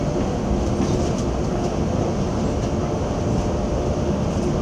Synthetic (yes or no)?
no